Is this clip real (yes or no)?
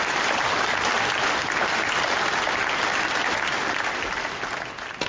yes